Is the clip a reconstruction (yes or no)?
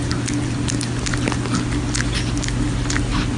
no